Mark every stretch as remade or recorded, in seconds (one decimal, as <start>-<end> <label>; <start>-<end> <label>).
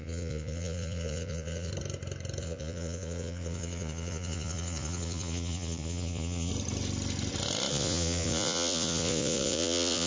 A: 0.0-1.7 remade; 1.7-2.4 recorded; 2.4-6.5 remade; 6.5-7.7 recorded; 7.7-10.1 remade